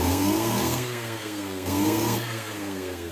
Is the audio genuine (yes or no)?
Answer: no